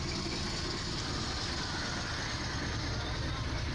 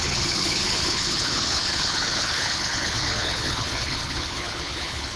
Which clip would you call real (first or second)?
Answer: first